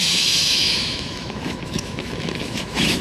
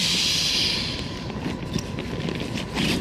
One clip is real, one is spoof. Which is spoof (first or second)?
first